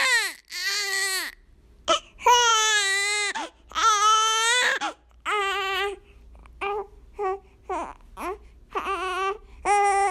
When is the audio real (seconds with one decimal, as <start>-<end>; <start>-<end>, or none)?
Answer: 0.0-10.1

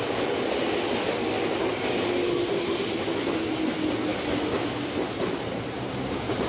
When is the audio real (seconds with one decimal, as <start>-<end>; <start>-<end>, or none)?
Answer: 0.0-4.1; 4.6-6.5

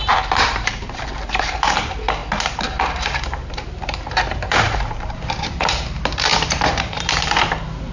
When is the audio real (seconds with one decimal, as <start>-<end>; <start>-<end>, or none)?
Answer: none

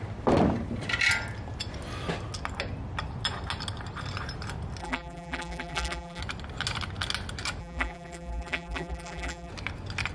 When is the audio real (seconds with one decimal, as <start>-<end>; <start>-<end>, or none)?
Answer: 0.0-4.8; 6.2-7.6; 9.5-10.1